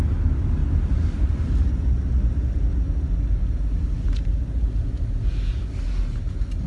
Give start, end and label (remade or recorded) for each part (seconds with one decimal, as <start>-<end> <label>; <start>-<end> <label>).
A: 0.0-6.7 recorded

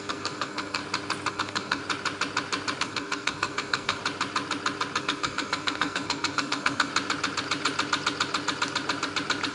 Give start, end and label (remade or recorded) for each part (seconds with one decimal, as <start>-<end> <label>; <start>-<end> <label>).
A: 0.0-0.8 remade; 0.8-1.3 recorded; 1.3-1.8 remade; 1.8-2.8 recorded; 2.8-4.0 remade; 4.0-5.0 recorded; 5.0-6.9 remade; 6.9-9.5 recorded